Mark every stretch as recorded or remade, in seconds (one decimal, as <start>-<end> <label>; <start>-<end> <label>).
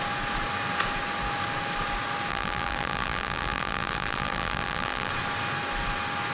0.0-2.3 recorded; 2.3-5.1 remade; 5.1-6.3 recorded